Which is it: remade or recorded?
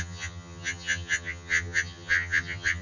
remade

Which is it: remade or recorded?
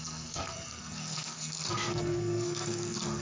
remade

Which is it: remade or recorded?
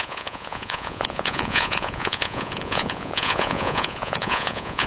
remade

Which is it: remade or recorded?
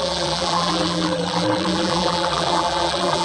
remade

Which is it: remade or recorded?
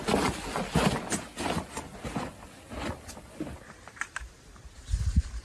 recorded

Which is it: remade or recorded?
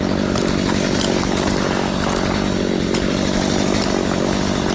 recorded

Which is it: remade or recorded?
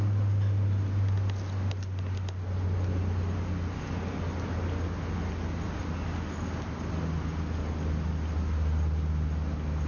recorded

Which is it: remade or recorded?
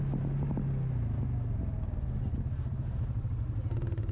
recorded